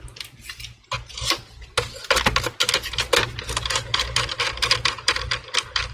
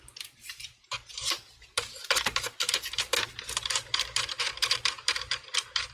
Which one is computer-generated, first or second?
second